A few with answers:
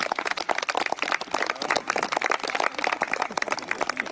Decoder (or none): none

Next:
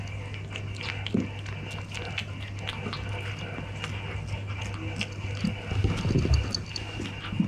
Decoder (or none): none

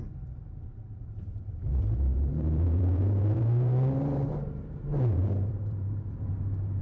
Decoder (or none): vocoder, BigVGAN v2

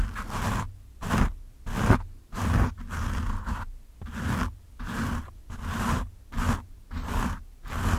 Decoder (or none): none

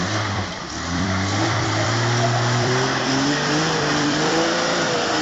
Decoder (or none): vocoder, BigVGAN v2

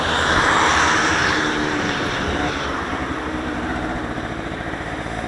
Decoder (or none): vocoder, BigVGAN v2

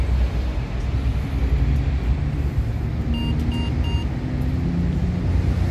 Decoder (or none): none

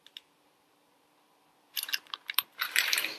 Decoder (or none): vocoder, BigVGAN v2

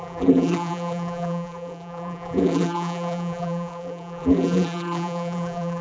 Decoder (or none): vocoder, BigVGAN v2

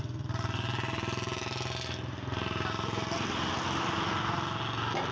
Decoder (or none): none